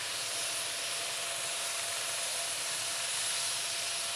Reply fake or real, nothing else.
real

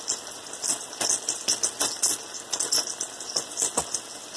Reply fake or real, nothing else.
real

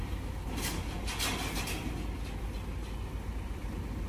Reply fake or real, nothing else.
real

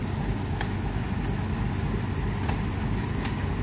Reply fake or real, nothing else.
real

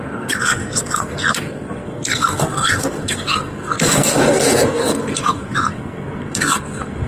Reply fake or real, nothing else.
fake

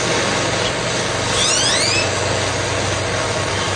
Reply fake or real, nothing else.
real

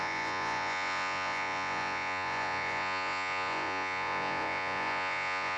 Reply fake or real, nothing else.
fake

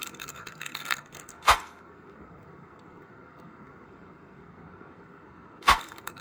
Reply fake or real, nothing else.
fake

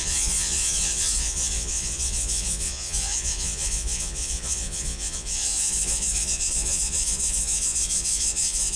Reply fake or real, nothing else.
fake